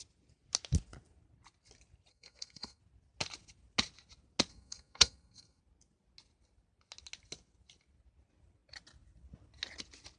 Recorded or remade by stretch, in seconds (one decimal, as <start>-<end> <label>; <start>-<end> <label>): 0.0-2.1 recorded; 2.1-2.8 remade; 2.8-4.5 recorded; 4.5-5.6 remade; 5.6-10.2 recorded